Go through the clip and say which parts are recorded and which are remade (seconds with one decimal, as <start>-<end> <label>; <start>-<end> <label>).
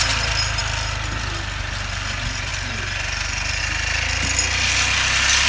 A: 0.0-5.5 recorded